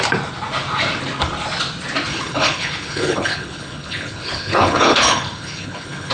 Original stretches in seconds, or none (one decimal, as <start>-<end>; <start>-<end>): 0.0-2.1